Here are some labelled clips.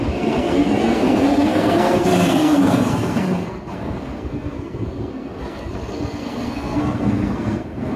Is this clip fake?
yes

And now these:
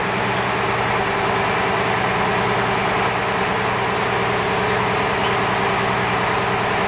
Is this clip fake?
no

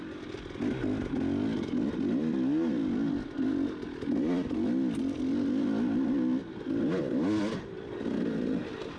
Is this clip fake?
no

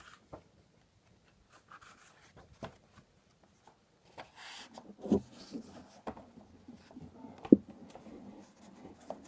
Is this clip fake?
no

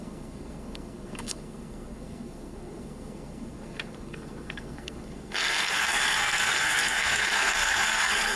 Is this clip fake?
yes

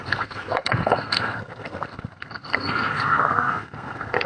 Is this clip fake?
yes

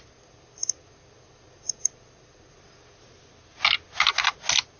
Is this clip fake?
no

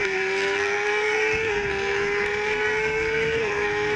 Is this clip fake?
yes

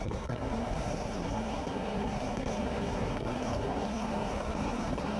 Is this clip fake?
yes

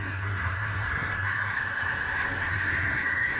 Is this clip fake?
yes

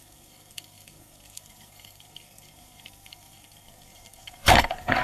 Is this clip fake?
yes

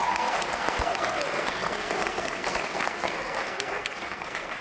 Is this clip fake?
yes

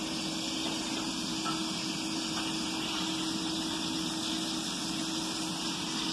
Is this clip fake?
no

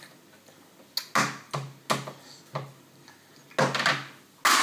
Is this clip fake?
no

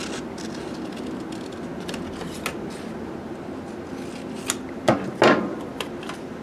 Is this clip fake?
no